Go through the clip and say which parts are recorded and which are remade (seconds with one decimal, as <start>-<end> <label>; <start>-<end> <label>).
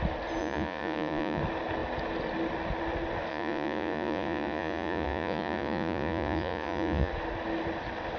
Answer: 0.0-0.4 recorded; 0.4-1.4 remade; 1.4-3.3 recorded; 3.3-7.1 remade; 7.1-8.2 recorded